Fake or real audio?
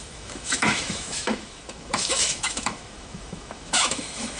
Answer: fake